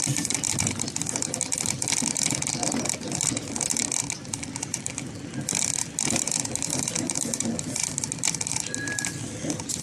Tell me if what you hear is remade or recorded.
recorded